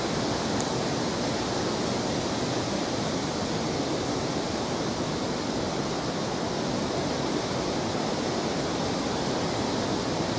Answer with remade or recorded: recorded